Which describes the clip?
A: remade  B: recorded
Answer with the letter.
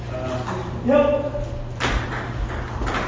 B